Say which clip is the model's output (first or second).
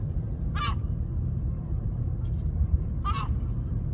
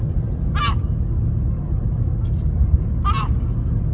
first